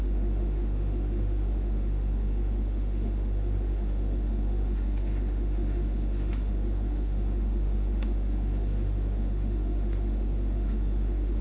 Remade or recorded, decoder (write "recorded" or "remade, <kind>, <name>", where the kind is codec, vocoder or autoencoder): remade, autoencoder, DAC-VAE